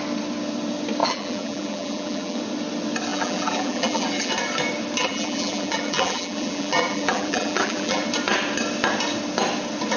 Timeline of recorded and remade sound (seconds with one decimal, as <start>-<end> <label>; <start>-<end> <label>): 0.0-1.0 recorded; 1.0-2.4 remade; 2.4-3.1 recorded; 3.1-4.3 remade; 4.3-5.0 recorded; 5.0-8.0 remade; 8.0-10.0 recorded